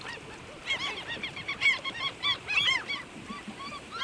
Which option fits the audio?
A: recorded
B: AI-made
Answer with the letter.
B